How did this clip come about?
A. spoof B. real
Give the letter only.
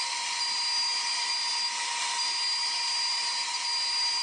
B